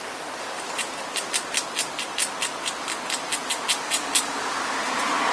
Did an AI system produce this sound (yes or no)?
no